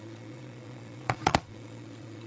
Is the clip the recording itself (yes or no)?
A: no